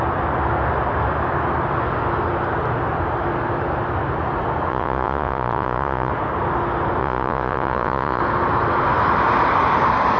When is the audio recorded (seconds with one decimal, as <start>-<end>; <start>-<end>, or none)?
0.0-4.7; 6.1-7.0; 8.2-10.2